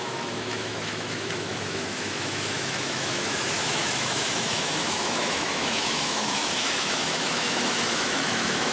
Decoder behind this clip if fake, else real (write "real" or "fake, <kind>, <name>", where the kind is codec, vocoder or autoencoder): fake, autoencoder, DAC-VAE